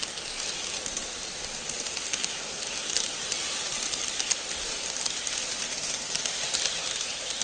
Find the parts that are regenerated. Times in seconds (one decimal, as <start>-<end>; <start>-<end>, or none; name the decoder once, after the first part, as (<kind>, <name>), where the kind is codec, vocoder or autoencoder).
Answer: none